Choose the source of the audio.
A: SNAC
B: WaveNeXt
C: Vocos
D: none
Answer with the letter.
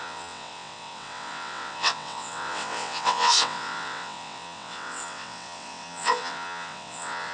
B